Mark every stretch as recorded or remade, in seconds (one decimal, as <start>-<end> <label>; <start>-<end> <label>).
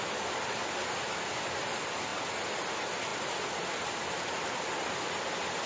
0.0-5.7 recorded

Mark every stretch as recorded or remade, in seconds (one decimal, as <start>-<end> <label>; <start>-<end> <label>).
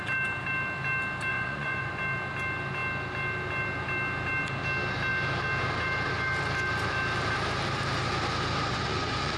0.0-1.3 recorded; 1.3-1.9 remade; 1.9-8.7 recorded; 8.7-9.4 remade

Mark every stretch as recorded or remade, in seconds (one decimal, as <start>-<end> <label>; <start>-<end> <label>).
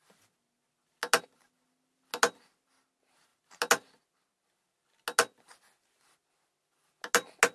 0.0-7.5 recorded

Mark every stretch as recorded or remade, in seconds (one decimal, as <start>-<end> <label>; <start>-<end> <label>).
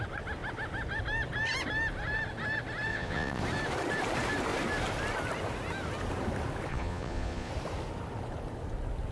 0.0-2.9 recorded; 2.9-3.4 remade; 3.4-6.7 recorded; 6.7-7.5 remade; 7.5-9.1 recorded